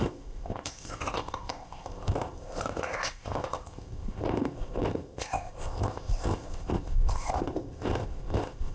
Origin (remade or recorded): remade